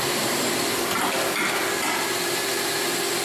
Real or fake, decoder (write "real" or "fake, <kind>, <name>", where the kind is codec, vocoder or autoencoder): fake, vocoder, BigVGAN v2